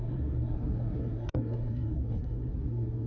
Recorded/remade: remade